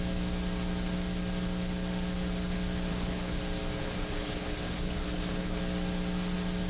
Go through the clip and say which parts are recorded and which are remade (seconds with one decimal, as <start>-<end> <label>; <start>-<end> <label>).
0.0-2.9 recorded; 2.9-3.4 remade; 3.4-3.8 recorded; 3.8-5.6 remade; 5.6-6.7 recorded

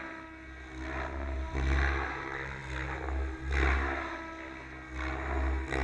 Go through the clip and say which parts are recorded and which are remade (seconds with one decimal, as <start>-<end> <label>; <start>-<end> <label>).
0.0-5.8 recorded

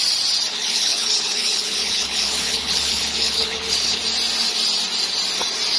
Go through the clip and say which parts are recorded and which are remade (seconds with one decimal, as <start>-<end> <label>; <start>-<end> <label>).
0.0-0.5 recorded; 0.5-4.0 remade; 4.0-5.8 recorded

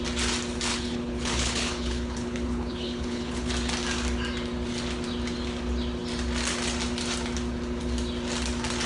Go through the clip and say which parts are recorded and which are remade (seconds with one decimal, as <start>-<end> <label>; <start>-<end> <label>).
0.0-0.7 recorded; 0.7-3.5 remade; 3.5-8.9 recorded

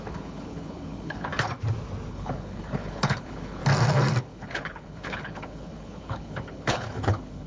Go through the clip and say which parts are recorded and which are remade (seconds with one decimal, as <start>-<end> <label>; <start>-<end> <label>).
0.0-1.3 remade; 1.3-2.1 recorded; 2.1-3.6 remade; 3.6-4.2 recorded; 4.2-7.5 remade

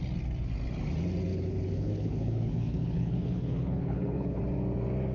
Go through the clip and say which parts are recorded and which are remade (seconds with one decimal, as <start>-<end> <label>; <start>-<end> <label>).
0.0-1.3 recorded; 1.3-4.4 remade; 4.4-5.1 recorded